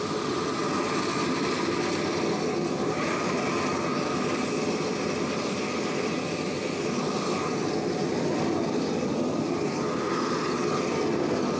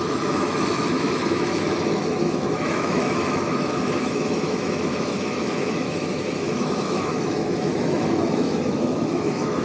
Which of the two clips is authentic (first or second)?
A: first